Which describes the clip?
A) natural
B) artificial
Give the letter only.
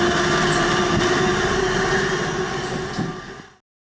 A